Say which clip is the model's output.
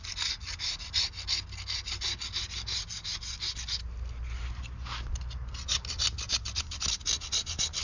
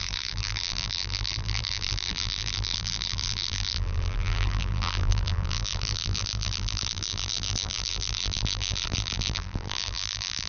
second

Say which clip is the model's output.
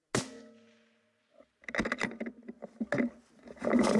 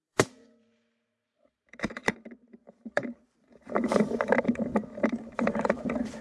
second